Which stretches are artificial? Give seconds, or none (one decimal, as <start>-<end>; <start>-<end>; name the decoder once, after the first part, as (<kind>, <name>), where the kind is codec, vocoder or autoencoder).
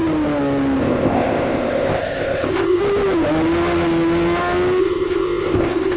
0.8-2.8 (codec, ZipCodec); 4.8-6.0